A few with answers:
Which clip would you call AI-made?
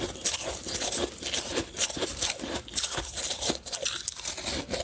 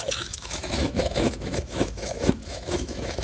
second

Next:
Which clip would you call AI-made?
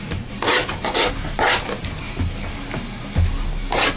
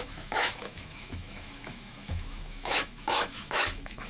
second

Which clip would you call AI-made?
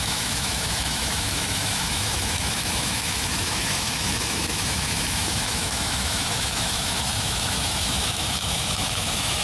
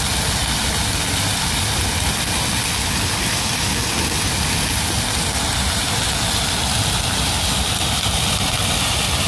first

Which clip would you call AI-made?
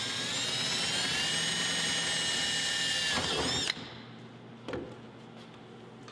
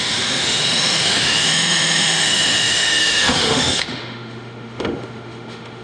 second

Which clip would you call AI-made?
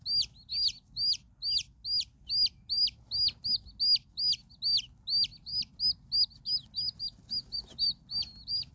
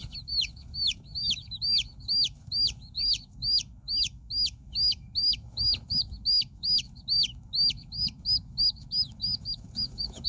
second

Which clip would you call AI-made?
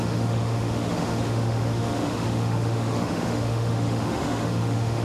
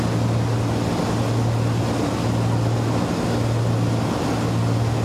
first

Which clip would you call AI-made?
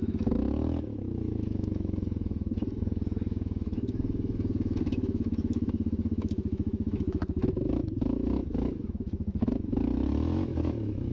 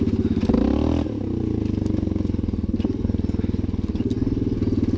first